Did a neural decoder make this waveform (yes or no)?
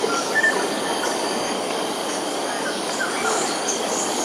yes